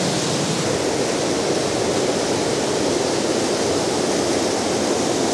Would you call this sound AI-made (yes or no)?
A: no